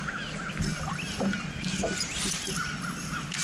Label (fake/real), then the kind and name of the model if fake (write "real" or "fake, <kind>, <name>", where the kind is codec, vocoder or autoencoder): real